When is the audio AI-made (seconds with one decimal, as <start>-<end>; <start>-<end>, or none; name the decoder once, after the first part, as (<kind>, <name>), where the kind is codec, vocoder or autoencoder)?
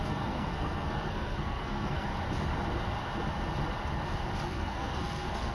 0.0-2.1 (codec, SNAC); 4.4-5.5